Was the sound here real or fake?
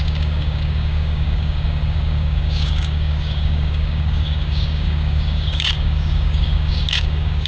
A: fake